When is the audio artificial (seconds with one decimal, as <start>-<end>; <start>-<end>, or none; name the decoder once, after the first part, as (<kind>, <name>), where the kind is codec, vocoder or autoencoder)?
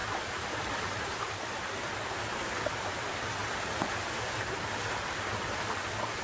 0.0-3.4 (vocoder, BigVGAN v2)